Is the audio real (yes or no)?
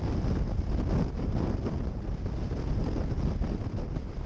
yes